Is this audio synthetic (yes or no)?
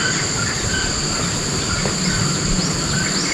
no